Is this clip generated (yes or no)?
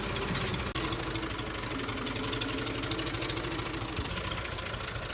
no